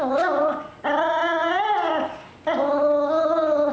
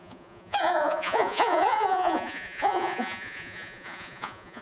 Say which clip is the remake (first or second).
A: second